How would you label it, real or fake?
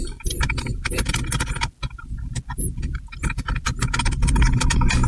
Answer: real